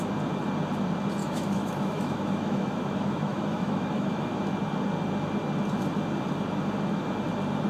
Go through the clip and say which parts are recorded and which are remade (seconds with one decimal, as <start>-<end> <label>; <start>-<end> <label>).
0.0-1.2 recorded; 1.2-4.4 remade; 4.4-7.7 recorded